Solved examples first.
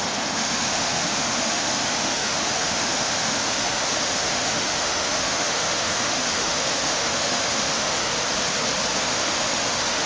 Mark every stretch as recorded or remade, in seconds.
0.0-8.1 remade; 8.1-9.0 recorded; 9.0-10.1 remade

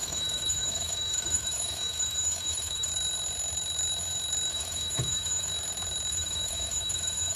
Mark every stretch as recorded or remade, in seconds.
0.0-2.9 remade; 2.9-4.5 recorded; 4.5-5.5 remade; 5.5-6.1 recorded; 6.1-7.4 remade

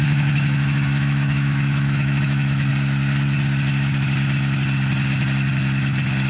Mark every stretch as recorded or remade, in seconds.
0.0-2.7 remade; 2.7-6.3 recorded

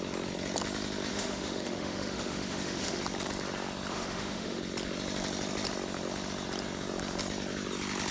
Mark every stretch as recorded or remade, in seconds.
0.0-1.1 recorded; 1.1-3.0 remade; 3.0-3.9 recorded; 3.9-4.6 remade; 4.6-8.1 recorded

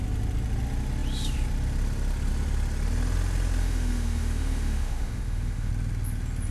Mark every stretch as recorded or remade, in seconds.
0.0-3.6 recorded; 3.6-5.7 remade; 5.7-6.5 recorded